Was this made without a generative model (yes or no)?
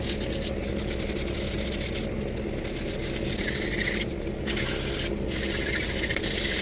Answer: yes